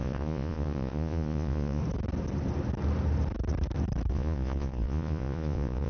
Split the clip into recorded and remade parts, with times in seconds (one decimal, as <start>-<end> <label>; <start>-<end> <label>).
0.0-1.8 remade; 1.8-4.1 recorded; 4.1-5.9 remade